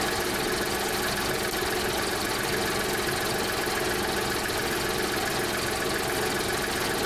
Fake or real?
real